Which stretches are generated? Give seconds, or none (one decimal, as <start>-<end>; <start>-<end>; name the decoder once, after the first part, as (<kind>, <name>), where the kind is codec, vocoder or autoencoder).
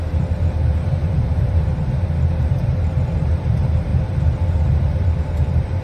0.0-1.7 (vocoder, BigVGAN v2); 2.3-3.9; 4.8-5.8